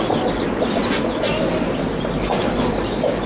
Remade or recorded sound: recorded